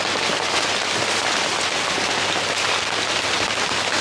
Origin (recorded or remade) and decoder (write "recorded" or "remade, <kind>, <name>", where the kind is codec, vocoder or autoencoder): recorded